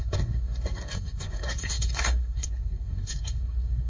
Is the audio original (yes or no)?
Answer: no